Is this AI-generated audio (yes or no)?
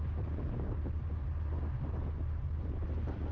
no